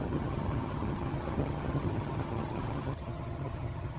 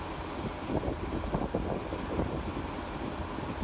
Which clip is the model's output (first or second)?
first